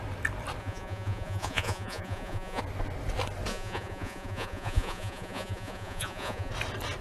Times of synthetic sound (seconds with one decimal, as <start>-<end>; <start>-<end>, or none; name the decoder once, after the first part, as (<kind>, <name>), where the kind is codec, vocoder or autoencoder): 0.6-2.6 (vocoder, Vocos); 3.5-6.5